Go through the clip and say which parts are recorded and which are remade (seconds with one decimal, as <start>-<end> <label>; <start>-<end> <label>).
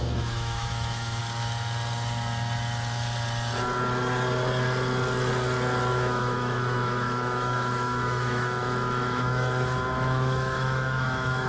0.0-1.2 remade; 1.2-5.9 recorded; 5.9-11.5 remade